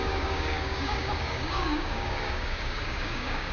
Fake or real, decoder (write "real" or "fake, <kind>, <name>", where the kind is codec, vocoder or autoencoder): fake, codec, DAC